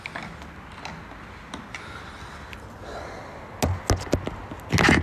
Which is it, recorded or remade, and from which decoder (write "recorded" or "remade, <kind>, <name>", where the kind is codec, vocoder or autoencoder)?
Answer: recorded